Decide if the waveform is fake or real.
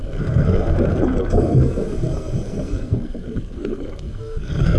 fake